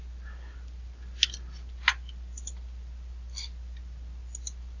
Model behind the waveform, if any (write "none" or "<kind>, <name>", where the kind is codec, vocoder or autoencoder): none